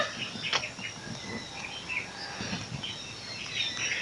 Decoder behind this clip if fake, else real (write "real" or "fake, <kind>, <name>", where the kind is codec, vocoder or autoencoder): real